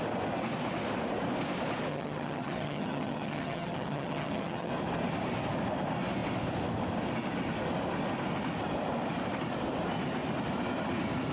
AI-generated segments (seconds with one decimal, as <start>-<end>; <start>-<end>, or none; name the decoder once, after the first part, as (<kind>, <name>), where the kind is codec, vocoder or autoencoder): 1.9-4.7 (vocoder, HiFi-GAN)